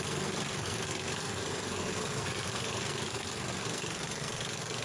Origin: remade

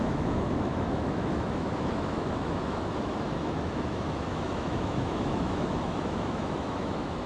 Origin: remade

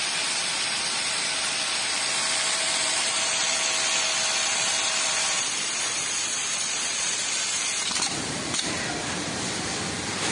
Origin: remade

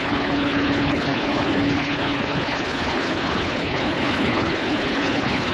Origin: remade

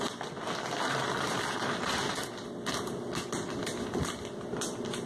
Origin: recorded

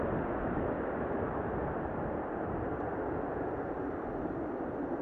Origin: recorded